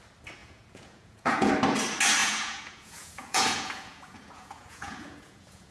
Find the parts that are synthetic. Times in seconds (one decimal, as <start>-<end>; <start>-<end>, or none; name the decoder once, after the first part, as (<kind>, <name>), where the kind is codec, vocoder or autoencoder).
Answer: 0.4-1.5 (vocoder, Vocos); 2.2-5.7